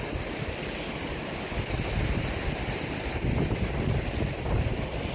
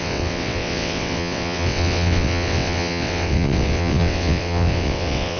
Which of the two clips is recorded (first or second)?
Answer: first